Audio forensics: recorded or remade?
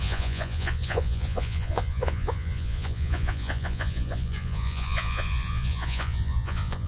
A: remade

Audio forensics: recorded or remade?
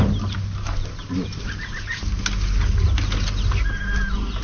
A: recorded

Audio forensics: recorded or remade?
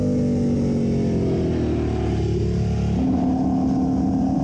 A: recorded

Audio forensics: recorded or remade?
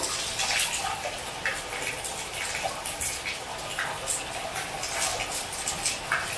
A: recorded